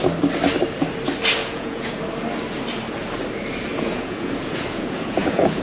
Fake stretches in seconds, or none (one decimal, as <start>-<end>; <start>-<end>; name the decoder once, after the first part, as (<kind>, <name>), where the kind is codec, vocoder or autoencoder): 1.4-2.0 (vocoder, Vocos); 3.7-5.6